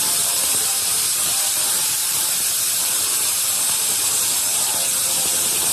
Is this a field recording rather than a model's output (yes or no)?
no